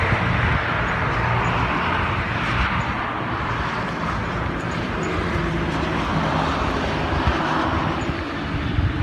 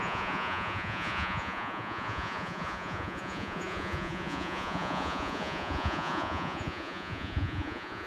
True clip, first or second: first